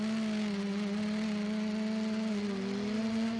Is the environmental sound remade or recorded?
recorded